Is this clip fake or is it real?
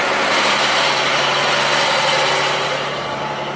fake